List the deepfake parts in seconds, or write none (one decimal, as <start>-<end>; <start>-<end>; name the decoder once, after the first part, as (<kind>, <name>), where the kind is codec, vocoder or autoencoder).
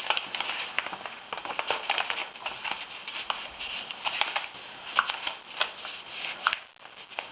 2.2-2.9 (vocoder, BigVGAN v2)